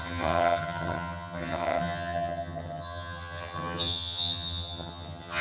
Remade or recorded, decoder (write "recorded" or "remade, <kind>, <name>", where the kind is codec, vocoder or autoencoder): remade, vocoder, HiFi-GAN